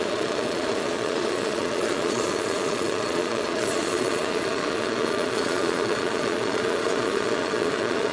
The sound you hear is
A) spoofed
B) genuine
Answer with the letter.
A